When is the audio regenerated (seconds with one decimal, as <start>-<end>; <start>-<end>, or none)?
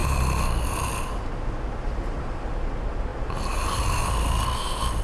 none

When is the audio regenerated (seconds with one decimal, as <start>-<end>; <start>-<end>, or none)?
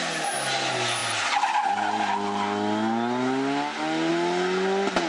none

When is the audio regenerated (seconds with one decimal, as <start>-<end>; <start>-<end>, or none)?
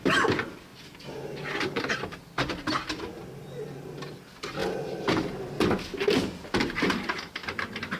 none